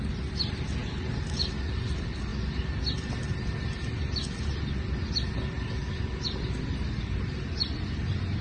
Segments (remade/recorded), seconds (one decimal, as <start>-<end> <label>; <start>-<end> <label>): 0.0-8.4 recorded